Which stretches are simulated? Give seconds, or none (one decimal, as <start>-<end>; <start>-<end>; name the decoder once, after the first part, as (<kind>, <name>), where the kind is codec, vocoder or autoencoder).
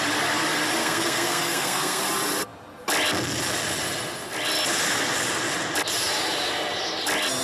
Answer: 0.8-2.0 (codec, SNAC)